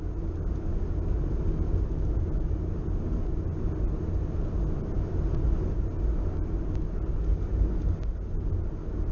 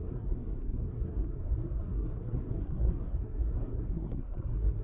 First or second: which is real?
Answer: first